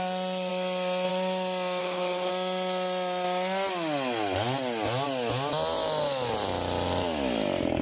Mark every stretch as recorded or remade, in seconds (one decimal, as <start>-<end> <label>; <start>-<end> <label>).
0.0-1.8 recorded; 1.8-2.3 remade; 2.3-7.8 recorded